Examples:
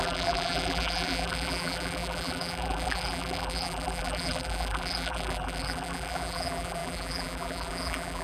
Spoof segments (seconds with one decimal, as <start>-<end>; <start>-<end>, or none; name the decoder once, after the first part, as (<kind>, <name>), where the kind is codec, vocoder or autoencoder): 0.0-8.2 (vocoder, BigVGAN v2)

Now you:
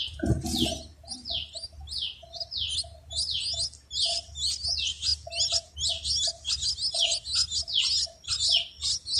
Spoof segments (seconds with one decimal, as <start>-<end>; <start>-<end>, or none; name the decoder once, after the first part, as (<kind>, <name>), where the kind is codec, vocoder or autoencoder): none

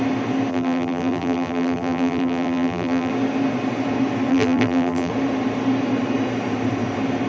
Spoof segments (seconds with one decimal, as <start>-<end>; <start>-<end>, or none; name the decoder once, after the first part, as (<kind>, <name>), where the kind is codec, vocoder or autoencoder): 0.5-3.1 (vocoder, BigVGAN v2); 4.3-5.1

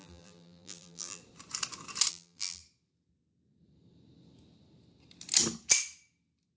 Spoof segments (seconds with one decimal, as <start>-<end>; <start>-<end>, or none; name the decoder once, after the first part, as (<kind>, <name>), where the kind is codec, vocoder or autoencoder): 0.0-1.2 (vocoder, BigVGAN v2); 2.1-2.6

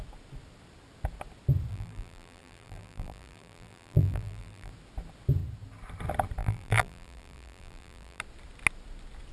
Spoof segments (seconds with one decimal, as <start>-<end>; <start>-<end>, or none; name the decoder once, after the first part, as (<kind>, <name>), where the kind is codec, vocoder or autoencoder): 1.7-4.7 (vocoder, BigVGAN v2); 6.4-8.2

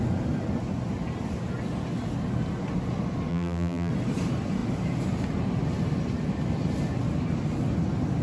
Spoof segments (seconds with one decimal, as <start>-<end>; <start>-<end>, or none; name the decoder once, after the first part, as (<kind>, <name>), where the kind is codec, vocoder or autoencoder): 3.3-3.9 (vocoder, BigVGAN v2)